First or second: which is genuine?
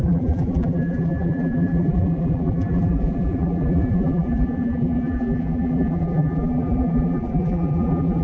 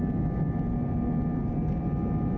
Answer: second